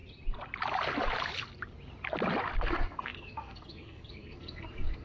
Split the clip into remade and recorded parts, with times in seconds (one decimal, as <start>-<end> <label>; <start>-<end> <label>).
0.0-2.7 recorded; 2.7-5.0 remade